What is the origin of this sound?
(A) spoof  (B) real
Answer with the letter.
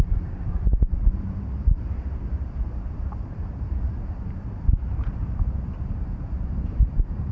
A